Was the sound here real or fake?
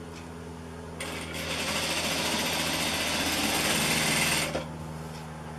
real